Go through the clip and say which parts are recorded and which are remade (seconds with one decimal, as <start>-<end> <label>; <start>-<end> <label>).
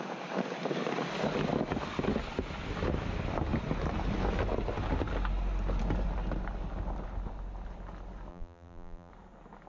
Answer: 0.0-8.3 recorded; 8.3-9.1 remade; 9.1-9.7 recorded